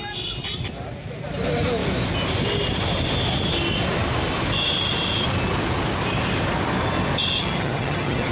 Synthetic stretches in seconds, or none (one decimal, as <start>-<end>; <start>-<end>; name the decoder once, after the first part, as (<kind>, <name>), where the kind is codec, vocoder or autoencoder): 7.4-8.3 (vocoder, HiFi-GAN)